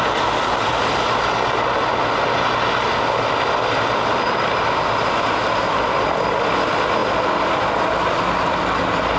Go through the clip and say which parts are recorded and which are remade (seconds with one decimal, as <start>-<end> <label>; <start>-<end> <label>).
0.0-9.2 recorded